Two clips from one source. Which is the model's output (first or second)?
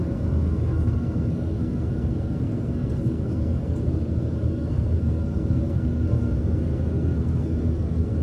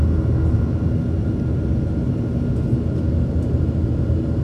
first